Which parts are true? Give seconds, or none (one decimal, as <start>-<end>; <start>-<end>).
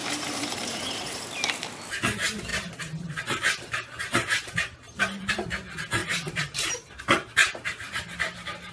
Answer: 1.3-2.5; 5.3-6.0; 7.0-7.4